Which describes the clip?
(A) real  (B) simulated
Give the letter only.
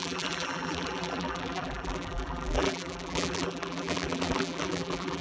B